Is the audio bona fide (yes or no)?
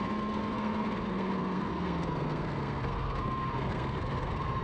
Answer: no